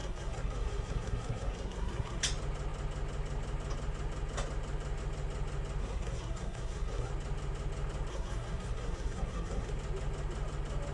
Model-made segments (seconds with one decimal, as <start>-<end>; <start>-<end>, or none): 0.0-2.2; 5.8-7.1; 8.1-9.7